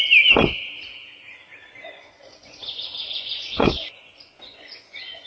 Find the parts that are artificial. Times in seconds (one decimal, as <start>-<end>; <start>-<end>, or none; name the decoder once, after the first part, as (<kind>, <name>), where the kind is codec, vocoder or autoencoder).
1.7-5.3 (vocoder, Vocos)

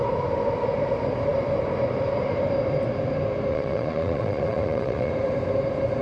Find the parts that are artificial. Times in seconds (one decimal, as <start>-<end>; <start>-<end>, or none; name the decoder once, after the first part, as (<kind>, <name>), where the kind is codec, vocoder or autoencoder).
3.5-5.1 (vocoder, Vocos)

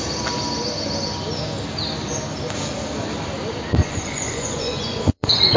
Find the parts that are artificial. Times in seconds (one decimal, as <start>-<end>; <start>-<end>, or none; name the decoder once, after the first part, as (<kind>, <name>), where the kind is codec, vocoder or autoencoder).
3.8-5.6 (vocoder, Vocos)

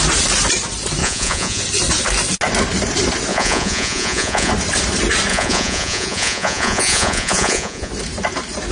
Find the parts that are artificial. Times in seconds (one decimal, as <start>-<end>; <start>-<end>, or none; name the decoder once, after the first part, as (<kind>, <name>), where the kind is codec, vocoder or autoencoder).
1.0-1.6 (vocoder, Vocos); 3.3-4.5; 5.3-7.9